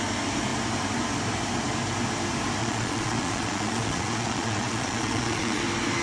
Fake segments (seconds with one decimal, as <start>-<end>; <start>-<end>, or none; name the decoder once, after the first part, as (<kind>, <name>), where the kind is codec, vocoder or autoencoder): 2.6-5.6 (vocoder, Vocos)